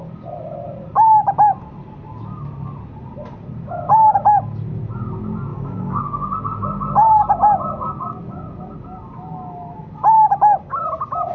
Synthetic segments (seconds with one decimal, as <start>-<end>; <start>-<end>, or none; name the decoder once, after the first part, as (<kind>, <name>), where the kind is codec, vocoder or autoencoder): 5.5-6.0 (codec, DAC)

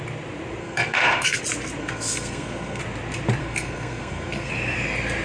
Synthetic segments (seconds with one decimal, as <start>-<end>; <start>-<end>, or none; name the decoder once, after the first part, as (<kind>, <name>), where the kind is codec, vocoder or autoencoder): 0.6-1.4 (codec, SNAC); 1.8-2.8; 3.4-4.5